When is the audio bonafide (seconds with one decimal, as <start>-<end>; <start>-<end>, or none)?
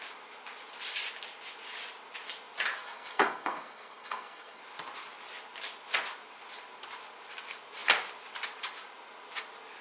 0.0-2.8; 4.6-9.8